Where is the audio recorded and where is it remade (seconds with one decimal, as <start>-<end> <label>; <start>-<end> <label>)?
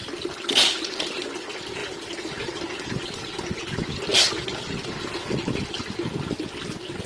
0.0-7.1 recorded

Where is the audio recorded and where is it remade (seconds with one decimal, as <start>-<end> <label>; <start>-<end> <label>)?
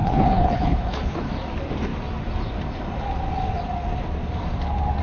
0.0-1.3 remade; 1.3-5.0 recorded